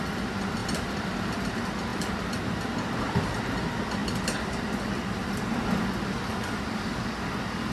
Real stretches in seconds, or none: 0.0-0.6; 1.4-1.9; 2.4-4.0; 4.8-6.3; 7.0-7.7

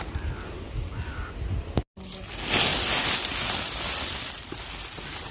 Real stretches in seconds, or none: 0.0-5.3

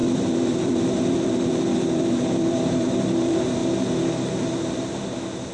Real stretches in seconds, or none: 3.6-4.3

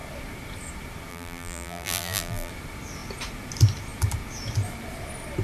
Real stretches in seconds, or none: 0.0-1.1; 2.5-5.4

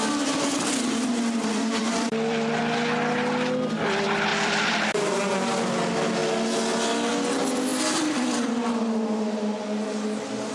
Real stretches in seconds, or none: 0.0-1.8; 2.6-4.3; 5.2-7.7; 8.5-10.5

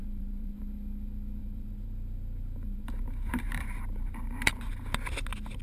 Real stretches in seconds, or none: 0.6-1.4; 4.8-5.6